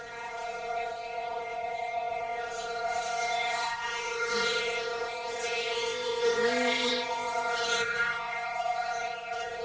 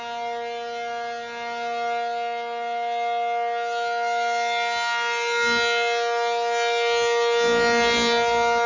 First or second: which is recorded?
second